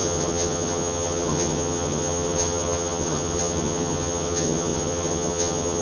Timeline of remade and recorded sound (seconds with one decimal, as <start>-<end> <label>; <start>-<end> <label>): 0.0-5.8 remade